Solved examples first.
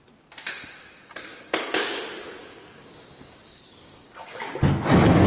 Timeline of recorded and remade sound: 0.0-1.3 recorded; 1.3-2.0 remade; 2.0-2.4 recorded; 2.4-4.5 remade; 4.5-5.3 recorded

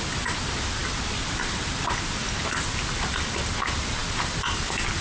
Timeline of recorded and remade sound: 0.0-5.0 recorded